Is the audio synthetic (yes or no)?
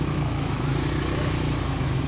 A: yes